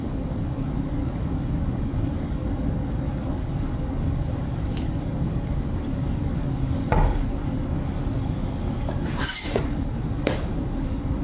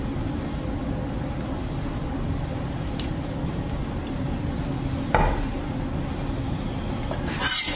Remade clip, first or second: first